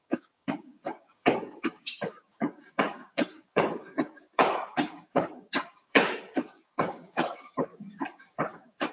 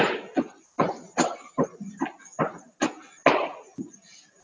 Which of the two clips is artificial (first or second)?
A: first